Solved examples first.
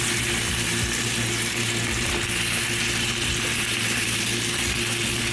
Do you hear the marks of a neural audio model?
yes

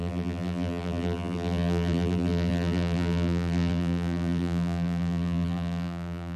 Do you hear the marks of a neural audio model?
yes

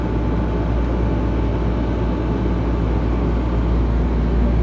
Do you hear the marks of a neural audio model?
no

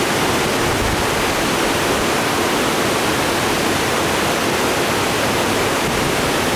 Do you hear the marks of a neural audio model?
no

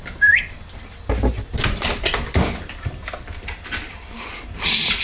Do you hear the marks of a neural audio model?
yes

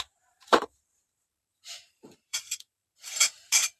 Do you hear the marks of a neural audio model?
yes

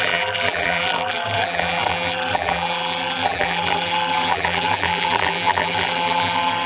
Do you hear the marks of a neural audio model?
yes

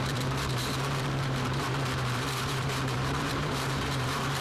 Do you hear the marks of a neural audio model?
yes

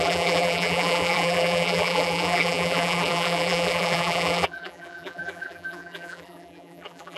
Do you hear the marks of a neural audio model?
yes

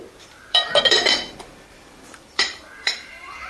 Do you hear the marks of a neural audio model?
yes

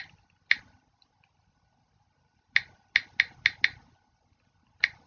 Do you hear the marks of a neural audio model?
no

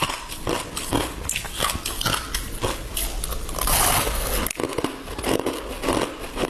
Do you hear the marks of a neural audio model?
no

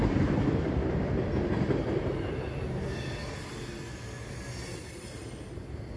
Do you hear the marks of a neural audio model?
no